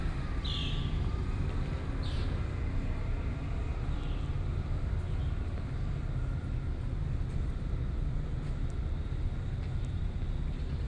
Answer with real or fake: real